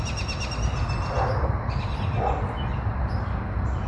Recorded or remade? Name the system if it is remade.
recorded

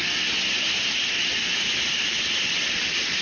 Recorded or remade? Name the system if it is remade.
recorded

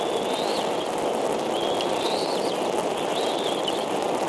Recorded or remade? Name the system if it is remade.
recorded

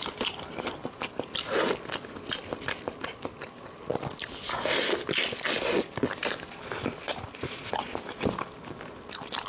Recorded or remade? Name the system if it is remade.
recorded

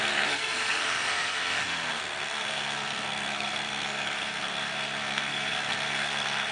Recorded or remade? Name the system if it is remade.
remade, codec, SNAC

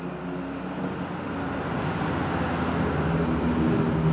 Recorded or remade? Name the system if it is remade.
recorded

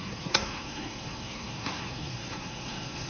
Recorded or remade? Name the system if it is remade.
remade, codec, SNAC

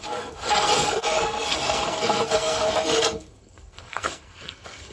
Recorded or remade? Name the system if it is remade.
remade, codec, SNAC